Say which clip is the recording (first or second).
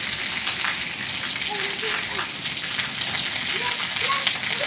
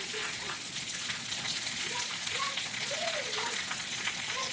first